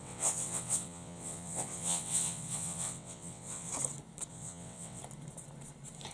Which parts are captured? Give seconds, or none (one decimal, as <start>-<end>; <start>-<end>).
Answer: 3.7-4.3; 5.0-6.1